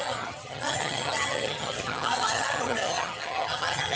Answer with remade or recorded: remade